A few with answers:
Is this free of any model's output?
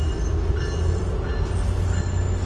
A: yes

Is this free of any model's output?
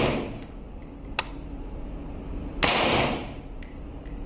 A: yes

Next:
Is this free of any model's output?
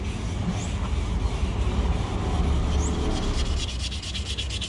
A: yes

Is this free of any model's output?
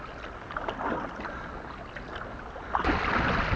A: yes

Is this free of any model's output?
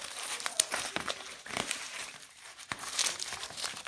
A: no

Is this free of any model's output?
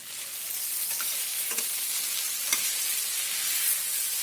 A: yes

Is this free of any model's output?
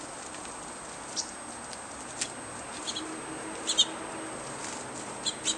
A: yes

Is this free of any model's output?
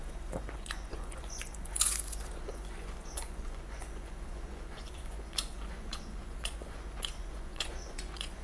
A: no